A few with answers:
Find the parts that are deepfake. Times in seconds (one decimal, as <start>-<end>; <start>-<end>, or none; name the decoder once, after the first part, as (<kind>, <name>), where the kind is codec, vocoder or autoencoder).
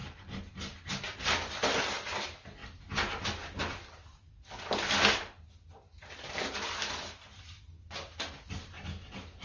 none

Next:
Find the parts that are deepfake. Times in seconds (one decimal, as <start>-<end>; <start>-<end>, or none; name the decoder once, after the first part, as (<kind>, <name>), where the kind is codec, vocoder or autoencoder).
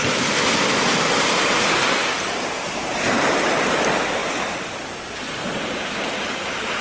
1.8-3.6 (vocoder, BigVGAN v2); 4.2-4.8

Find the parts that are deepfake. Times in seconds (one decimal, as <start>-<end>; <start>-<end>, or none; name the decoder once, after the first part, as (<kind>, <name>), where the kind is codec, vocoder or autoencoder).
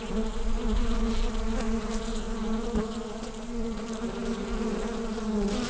none